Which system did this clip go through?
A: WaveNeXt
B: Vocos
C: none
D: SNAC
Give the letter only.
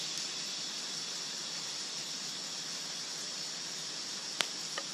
C